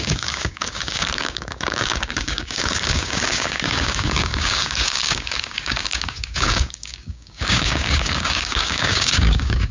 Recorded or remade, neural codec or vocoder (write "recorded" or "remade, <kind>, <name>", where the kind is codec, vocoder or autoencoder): remade, codec, DAC